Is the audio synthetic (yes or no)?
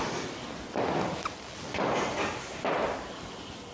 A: no